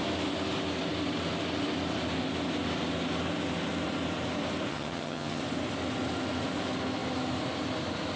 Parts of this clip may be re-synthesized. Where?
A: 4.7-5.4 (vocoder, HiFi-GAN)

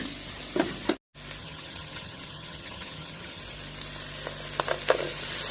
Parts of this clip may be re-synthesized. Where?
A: 1.4-3.4 (vocoder, HiFi-GAN)

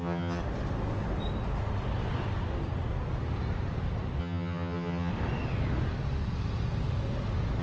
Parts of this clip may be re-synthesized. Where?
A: 0.0-0.4 (vocoder, HiFi-GAN); 4.2-5.1

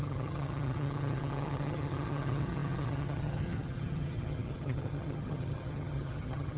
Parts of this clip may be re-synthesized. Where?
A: 0.0-6.6 (vocoder, HiFi-GAN)

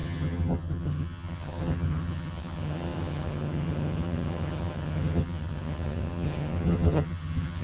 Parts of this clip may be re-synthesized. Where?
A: 0.0-7.6 (vocoder, HiFi-GAN)

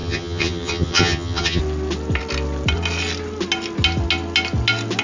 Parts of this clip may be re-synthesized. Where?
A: 0.0-1.6 (vocoder, HiFi-GAN)

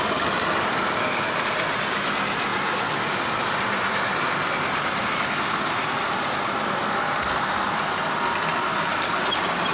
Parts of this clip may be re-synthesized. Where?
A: none